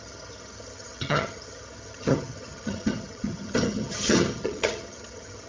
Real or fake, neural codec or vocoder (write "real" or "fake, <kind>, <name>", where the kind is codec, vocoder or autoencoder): fake, vocoder, HiFi-GAN